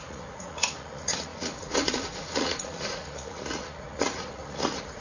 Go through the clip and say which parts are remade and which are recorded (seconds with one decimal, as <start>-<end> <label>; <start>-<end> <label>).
0.0-5.0 remade